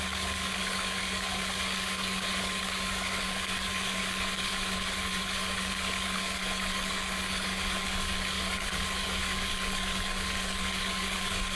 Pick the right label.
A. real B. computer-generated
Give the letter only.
B